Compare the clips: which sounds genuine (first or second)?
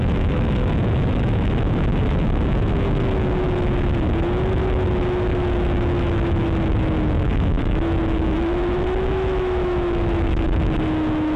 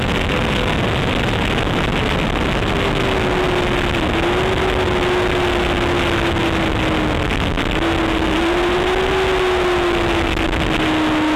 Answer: second